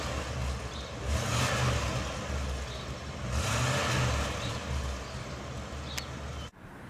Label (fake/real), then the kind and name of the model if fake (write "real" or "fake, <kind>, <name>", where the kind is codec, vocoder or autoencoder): real